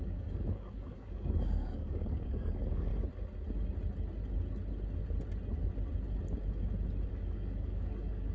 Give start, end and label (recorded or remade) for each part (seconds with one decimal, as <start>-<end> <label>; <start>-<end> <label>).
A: 0.0-2.9 remade; 2.9-7.1 recorded; 7.1-8.3 remade